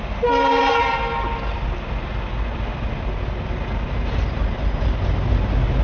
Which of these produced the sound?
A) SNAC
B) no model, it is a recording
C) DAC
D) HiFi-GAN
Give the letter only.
B